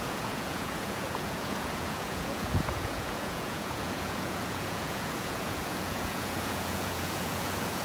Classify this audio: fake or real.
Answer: fake